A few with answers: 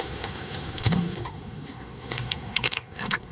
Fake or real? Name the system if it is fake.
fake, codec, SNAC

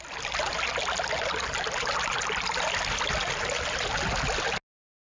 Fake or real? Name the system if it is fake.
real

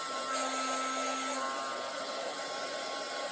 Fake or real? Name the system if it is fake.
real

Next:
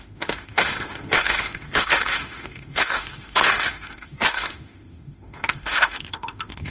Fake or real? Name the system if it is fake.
fake, autoencoder, DAC-VAE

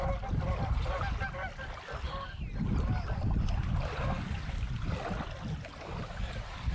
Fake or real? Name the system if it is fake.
real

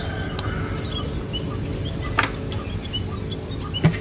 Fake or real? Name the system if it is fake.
real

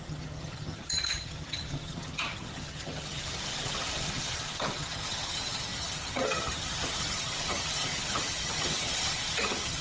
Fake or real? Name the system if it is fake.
fake, vocoder, HiFi-GAN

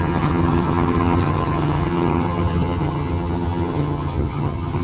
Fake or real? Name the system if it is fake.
fake, vocoder, HiFi-GAN